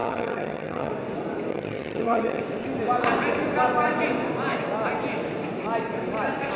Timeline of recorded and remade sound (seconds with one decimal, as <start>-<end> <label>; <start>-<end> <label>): 0.0-0.9 remade; 0.9-1.5 recorded; 1.5-2.4 remade; 2.4-6.6 recorded